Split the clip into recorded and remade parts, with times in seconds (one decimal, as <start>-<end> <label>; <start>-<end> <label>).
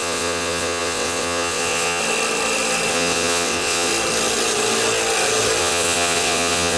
0.0-2.0 remade; 2.0-2.9 recorded; 2.9-3.9 remade; 3.9-5.6 recorded; 5.6-6.8 remade